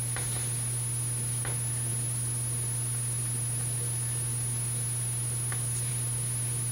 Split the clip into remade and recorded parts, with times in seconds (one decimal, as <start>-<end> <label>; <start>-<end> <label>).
0.0-6.7 recorded